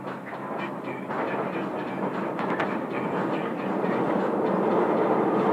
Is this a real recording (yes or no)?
yes